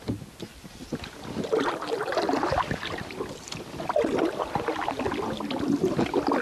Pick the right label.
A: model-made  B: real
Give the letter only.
B